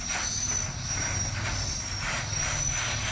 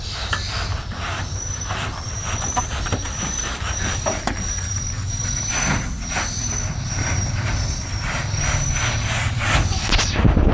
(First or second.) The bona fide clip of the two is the first